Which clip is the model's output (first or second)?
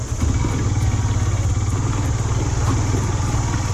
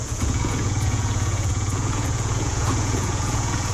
second